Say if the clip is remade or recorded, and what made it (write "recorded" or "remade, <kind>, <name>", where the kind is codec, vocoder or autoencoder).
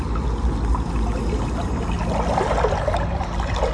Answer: recorded